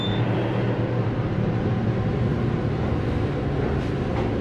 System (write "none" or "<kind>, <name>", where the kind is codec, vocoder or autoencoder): none